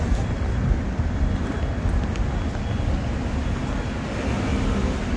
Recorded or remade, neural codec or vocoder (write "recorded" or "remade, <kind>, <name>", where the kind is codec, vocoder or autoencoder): recorded